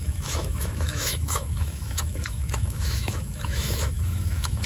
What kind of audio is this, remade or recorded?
remade